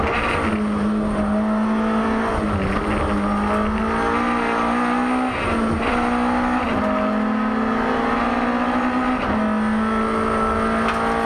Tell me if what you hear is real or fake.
real